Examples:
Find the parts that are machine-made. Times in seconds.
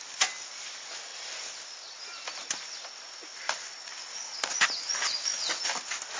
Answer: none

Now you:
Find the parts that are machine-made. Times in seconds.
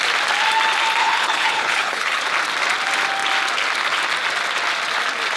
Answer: 1.0-2.2 (codec, HILCodec)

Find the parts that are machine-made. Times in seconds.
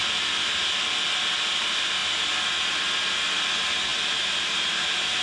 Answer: none